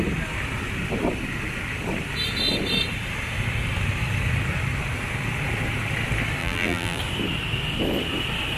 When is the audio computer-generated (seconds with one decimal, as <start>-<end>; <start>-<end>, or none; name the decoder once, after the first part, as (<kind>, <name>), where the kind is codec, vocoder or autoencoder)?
6.4-7.0 (vocoder, BigVGAN v2)